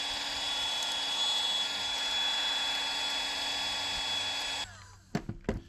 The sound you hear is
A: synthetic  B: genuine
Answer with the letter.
B